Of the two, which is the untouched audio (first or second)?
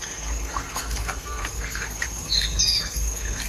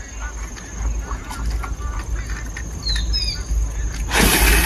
second